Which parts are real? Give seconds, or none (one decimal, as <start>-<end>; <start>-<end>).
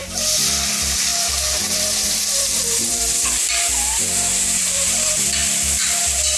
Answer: 0.0-0.7